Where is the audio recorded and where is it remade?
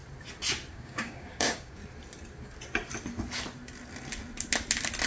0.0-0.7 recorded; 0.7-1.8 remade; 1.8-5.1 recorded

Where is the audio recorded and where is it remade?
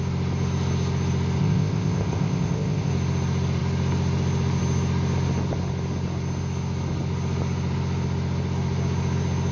0.0-1.4 recorded; 1.4-2.9 remade; 2.9-9.5 recorded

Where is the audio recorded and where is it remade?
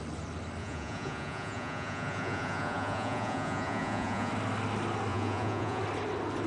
0.0-0.6 recorded; 0.6-4.3 remade; 4.3-5.1 recorded; 5.1-5.8 remade; 5.8-6.5 recorded